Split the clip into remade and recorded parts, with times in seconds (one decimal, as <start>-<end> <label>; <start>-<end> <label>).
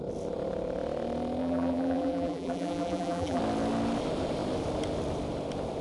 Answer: 0.0-1.4 recorded; 1.4-3.4 remade; 3.4-5.8 recorded